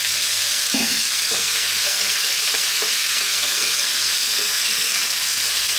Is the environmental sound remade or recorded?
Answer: remade